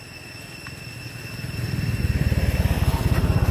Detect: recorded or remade recorded